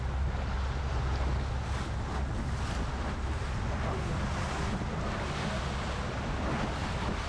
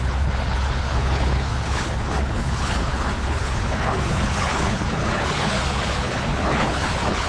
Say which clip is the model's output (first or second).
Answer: second